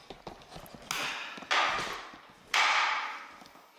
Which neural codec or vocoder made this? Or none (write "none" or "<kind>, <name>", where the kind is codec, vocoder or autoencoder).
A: none